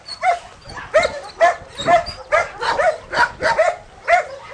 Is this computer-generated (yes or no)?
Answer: no